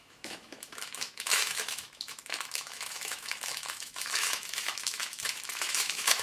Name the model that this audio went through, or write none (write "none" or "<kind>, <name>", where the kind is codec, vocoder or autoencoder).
autoencoder, DAC-VAE